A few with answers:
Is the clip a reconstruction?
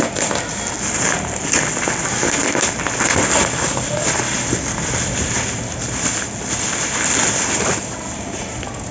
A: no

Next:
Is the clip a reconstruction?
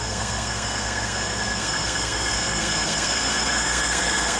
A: yes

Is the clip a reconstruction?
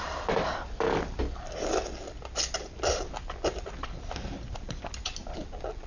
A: no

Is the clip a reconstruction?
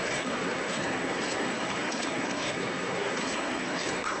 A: yes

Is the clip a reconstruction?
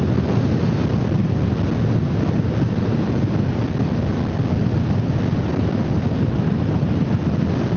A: no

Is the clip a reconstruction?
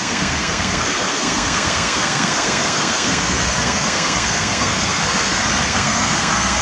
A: yes